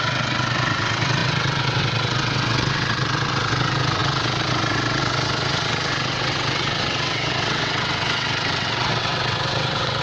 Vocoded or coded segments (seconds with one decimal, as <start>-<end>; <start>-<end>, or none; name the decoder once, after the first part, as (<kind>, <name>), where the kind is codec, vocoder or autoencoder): 0.0-10.0 (vocoder, WaveNeXt)